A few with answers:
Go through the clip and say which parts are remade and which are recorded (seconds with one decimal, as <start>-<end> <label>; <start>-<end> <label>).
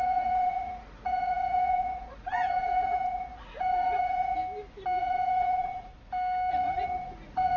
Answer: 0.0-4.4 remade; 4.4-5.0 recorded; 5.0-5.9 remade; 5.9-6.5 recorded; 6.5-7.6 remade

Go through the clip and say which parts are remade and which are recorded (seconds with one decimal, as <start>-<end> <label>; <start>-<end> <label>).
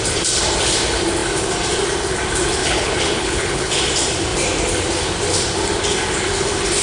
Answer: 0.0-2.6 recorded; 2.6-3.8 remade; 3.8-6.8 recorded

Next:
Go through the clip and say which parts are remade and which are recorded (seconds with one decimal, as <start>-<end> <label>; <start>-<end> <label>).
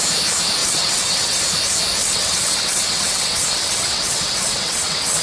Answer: 0.0-0.6 recorded; 0.6-1.4 remade; 1.4-2.0 recorded; 2.0-5.2 remade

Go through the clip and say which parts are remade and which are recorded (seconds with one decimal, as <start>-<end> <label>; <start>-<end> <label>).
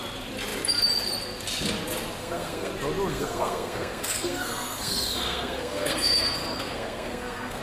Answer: 0.0-2.2 recorded; 2.2-2.7 remade; 2.7-3.1 recorded; 3.1-7.6 remade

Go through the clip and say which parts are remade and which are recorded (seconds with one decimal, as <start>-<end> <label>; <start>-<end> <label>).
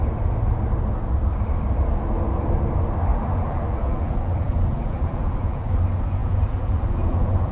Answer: 0.0-3.1 recorded; 3.1-5.8 remade; 5.8-6.2 recorded; 6.2-7.5 remade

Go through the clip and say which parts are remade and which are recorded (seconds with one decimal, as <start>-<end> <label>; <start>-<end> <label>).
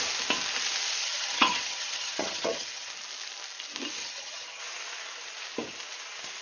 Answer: 0.0-1.0 recorded; 1.0-2.9 remade; 2.9-4.0 recorded; 4.0-4.6 remade; 4.6-6.4 recorded